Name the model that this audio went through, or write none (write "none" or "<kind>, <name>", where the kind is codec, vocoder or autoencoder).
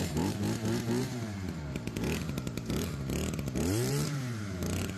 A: vocoder, BigVGAN v2